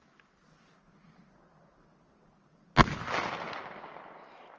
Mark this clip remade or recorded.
recorded